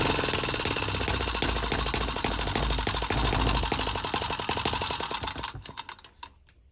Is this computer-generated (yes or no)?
no